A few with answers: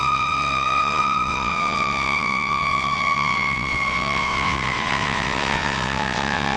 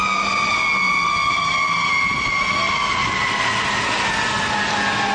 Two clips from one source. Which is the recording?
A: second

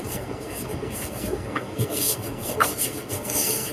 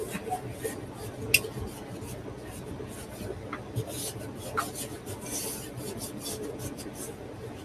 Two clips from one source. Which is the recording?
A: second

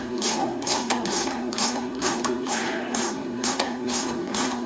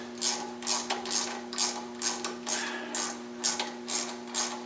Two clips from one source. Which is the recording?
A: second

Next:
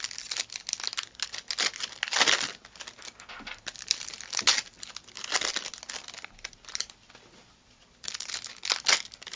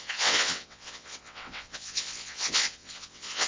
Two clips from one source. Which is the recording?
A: first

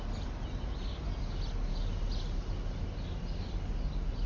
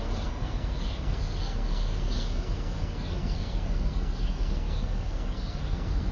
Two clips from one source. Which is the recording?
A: first